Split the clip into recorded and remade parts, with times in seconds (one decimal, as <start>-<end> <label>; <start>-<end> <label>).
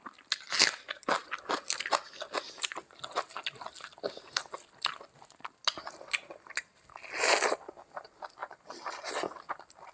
0.0-8.4 recorded; 8.4-9.1 remade; 9.1-9.9 recorded